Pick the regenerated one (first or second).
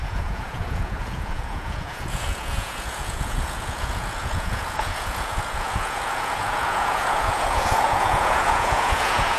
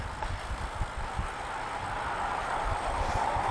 first